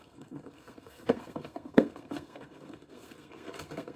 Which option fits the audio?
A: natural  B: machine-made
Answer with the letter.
B